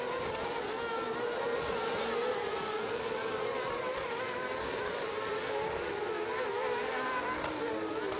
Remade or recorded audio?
recorded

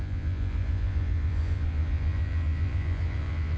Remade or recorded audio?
remade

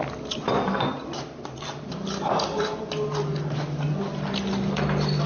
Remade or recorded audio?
recorded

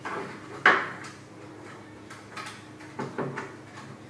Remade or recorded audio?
recorded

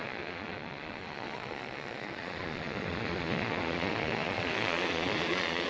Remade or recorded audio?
remade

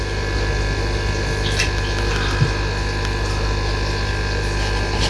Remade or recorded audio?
recorded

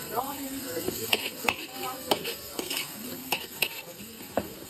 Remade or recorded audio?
remade